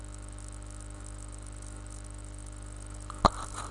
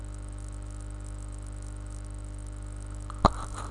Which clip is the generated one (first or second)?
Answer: second